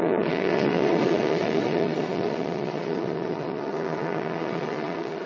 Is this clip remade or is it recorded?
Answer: remade